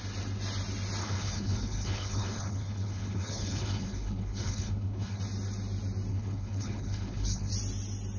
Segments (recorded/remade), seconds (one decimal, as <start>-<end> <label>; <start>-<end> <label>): 0.0-1.0 recorded; 1.0-5.2 remade; 5.2-6.1 recorded; 6.1-7.5 remade; 7.5-8.2 recorded